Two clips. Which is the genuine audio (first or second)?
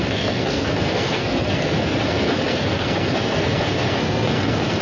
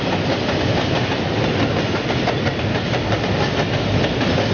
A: second